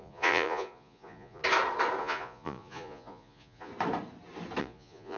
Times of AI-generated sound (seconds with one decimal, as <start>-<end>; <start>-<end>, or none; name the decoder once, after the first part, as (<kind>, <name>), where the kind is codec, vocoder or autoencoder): 0.0-1.4 (vocoder, Vocos); 2.0-3.7; 4.6-5.2